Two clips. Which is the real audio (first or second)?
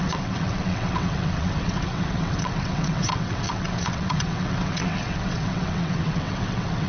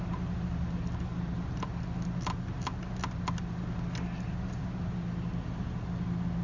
second